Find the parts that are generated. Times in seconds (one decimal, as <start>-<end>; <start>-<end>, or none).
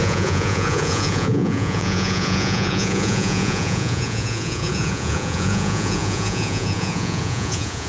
0.0-7.9